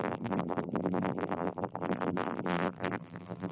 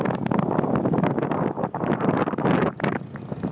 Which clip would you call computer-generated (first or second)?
first